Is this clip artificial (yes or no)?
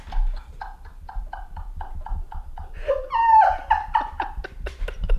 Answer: no